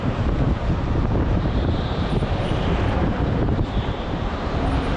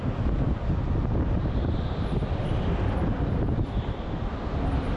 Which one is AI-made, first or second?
first